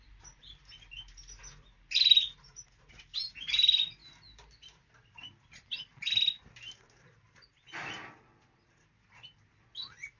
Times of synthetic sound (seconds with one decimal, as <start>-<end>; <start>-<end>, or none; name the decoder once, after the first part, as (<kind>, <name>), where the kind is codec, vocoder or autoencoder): none